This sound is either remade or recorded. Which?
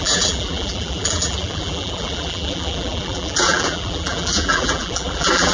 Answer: remade